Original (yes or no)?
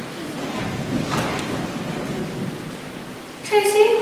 yes